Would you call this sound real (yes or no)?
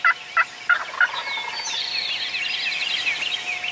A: yes